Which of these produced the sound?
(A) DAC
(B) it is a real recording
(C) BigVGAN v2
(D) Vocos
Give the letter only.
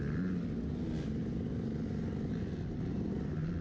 B